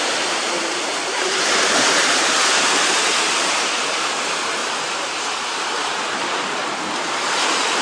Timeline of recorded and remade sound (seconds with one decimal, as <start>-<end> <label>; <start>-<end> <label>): 0.0-7.8 remade

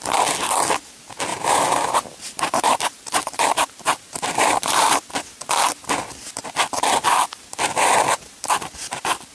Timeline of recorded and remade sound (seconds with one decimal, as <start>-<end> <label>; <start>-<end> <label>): 0.0-1.3 recorded; 1.3-5.0 remade; 5.0-9.3 recorded

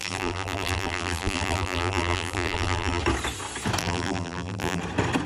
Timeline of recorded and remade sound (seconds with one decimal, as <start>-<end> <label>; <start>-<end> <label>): 0.0-3.0 remade; 3.0-3.8 recorded; 3.8-4.8 remade; 4.8-5.3 recorded

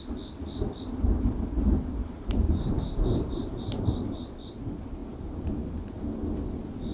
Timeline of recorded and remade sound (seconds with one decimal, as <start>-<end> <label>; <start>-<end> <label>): 0.0-2.0 recorded; 2.0-4.2 remade; 4.2-6.9 recorded

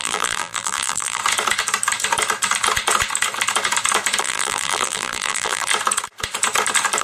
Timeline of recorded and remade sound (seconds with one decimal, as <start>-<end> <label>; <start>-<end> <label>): 0.0-1.2 remade; 1.2-4.2 recorded; 4.2-5.7 remade; 5.7-7.0 recorded